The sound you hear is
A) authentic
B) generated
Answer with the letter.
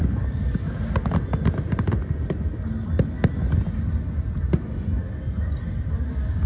A